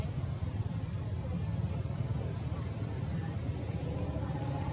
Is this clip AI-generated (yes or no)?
no